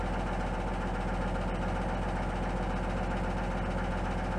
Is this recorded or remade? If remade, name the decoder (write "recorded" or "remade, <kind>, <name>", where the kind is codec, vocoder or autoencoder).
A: recorded